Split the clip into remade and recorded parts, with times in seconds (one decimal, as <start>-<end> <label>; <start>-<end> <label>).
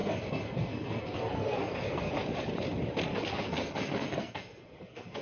0.0-2.1 remade; 2.1-3.1 recorded; 3.1-5.2 remade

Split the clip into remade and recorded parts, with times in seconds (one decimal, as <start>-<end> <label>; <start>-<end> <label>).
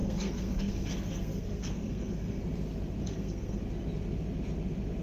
0.0-2.4 remade; 2.4-3.0 recorded; 3.0-3.6 remade; 3.6-5.0 recorded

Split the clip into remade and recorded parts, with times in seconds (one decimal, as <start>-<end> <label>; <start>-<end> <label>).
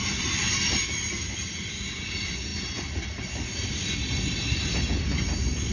0.0-5.7 recorded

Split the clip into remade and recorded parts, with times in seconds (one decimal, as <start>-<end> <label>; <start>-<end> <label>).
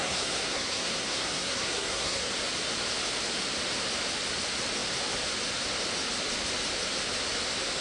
0.0-2.3 remade; 2.3-7.8 recorded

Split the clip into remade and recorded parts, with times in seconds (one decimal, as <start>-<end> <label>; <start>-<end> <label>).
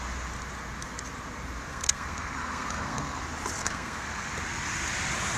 0.0-1.7 recorded; 1.7-3.2 remade; 3.2-3.6 recorded; 3.6-4.3 remade; 4.3-5.4 recorded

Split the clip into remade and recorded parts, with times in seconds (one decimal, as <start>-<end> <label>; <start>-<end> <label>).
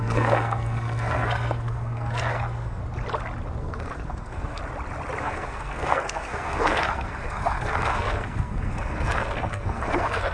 0.0-2.8 remade; 2.8-3.6 recorded; 3.6-4.6 remade; 4.6-5.2 recorded; 5.2-10.3 remade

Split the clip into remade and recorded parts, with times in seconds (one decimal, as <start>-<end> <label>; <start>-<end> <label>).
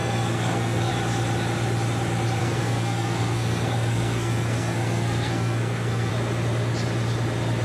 0.0-0.9 remade; 0.9-2.4 recorded; 2.4-6.1 remade; 6.1-7.6 recorded